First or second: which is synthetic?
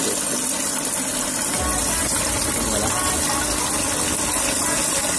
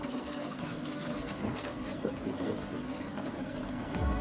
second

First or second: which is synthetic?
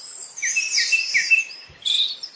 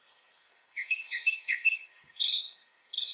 second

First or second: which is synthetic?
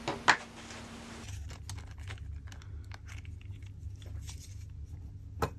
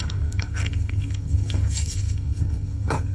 second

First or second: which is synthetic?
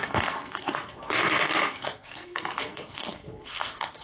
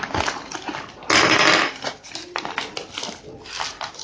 first